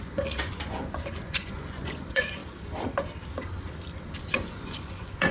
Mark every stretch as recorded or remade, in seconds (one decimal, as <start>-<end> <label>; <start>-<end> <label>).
0.0-2.4 remade; 2.4-4.2 recorded; 4.2-5.3 remade